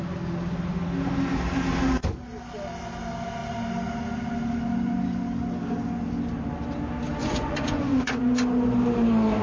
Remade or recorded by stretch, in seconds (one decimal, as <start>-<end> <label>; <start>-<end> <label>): 0.0-7.2 recorded; 7.2-8.2 remade; 8.2-9.4 recorded